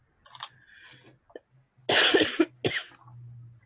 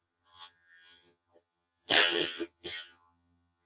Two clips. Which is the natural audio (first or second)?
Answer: first